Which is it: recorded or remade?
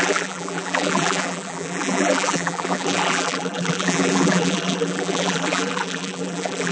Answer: remade